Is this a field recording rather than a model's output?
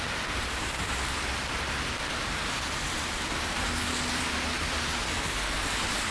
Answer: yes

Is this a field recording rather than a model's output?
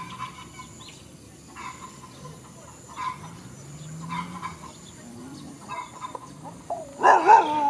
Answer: yes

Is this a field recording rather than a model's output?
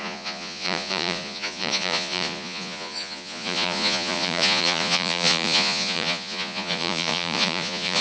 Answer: no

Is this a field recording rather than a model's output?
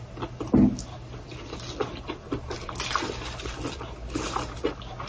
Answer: yes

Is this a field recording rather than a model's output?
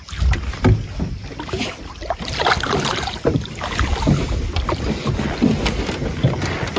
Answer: yes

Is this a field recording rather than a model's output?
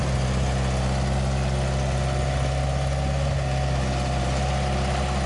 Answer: yes